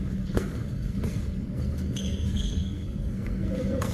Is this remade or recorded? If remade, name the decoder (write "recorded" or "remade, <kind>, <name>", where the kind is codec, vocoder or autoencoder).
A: remade, codec, SNAC